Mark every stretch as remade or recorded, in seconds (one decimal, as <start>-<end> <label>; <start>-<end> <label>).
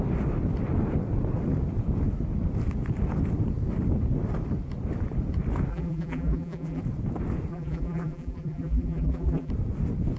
0.0-5.7 recorded; 5.7-6.8 remade; 6.8-7.5 recorded; 7.5-9.5 remade; 9.5-10.2 recorded